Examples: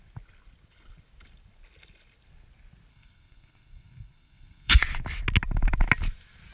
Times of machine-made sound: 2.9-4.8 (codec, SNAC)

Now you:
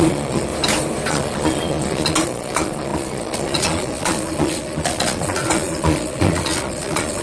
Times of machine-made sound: 0.0-0.5 (vocoder, Vocos); 1.1-7.2

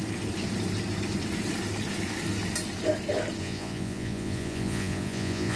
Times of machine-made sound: 3.4-5.6 (vocoder, Vocos)

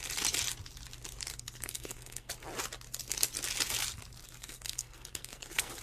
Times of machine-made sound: 1.3-2.3 (codec, SNAC); 4.2-5.8

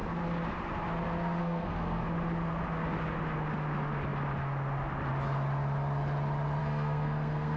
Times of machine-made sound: 1.4-2.0 (codec, SNAC); 6.6-7.6